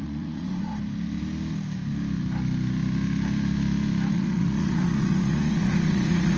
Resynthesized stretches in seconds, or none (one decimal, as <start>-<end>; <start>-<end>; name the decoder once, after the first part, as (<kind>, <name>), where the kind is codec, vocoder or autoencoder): 0.0-0.7 (vocoder, Vocos); 4.1-6.4